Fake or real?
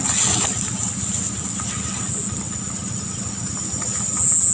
real